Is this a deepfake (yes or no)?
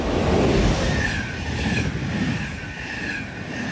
no